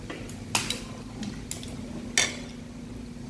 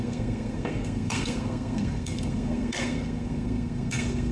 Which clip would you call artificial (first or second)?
second